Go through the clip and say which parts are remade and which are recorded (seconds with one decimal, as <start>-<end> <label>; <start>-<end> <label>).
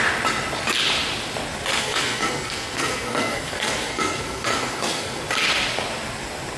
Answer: 0.0-1.8 recorded; 1.8-5.2 remade; 5.2-6.6 recorded